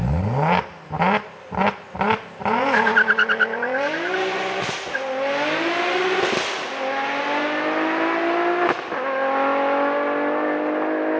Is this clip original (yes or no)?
yes